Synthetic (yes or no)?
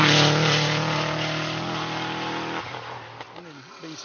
no